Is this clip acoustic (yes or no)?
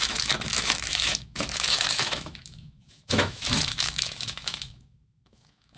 no